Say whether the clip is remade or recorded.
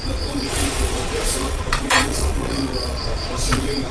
remade